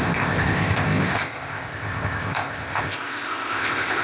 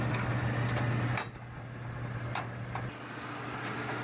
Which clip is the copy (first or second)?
first